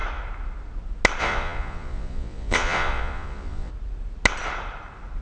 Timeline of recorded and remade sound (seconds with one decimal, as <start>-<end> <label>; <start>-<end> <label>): 0.0-1.2 recorded; 1.2-3.7 remade; 3.7-5.2 recorded